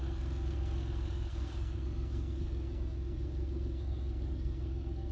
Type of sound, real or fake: fake